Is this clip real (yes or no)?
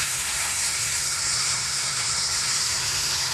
no